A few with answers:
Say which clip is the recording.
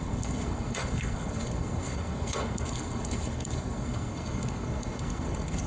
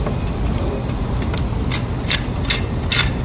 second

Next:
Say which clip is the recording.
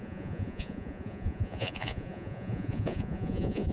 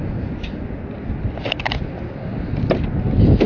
second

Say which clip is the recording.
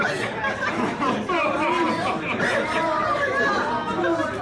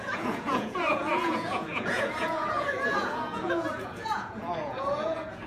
first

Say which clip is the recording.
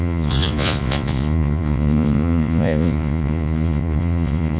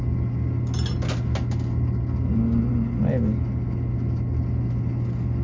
second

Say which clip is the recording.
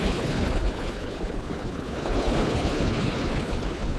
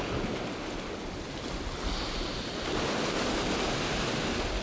second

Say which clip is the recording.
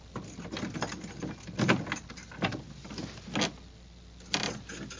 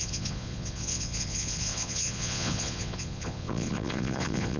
first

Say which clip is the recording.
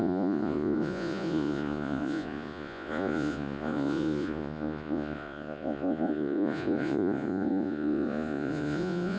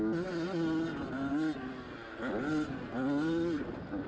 second